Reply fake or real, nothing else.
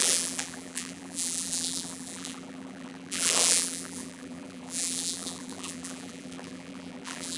fake